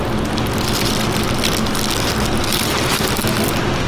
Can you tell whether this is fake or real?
real